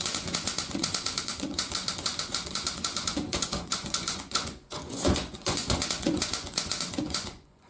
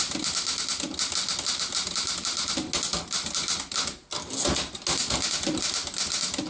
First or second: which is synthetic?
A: first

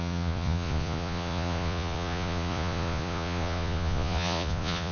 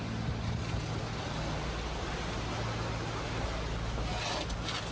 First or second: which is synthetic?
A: first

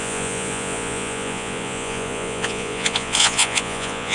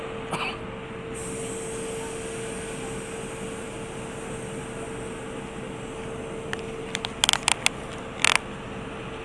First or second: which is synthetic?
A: first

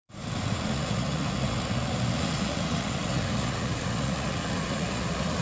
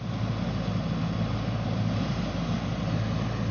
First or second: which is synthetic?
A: first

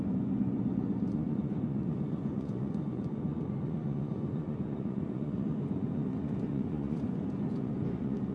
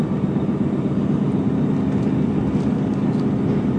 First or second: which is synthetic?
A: first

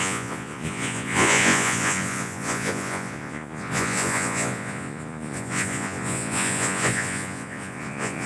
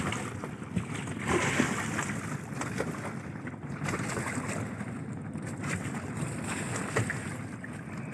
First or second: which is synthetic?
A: first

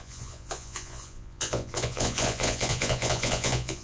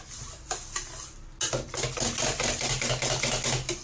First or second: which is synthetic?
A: first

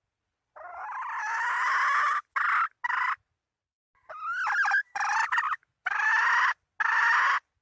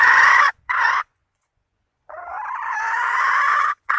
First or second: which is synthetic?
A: second